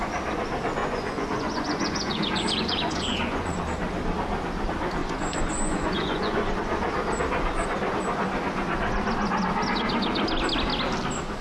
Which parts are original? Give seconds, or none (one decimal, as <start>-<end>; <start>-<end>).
0.0-0.8; 3.6-5.0; 6.5-11.4